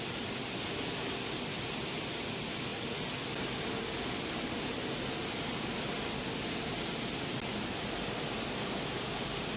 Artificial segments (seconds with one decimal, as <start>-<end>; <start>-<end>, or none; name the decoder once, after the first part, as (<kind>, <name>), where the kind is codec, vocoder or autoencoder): none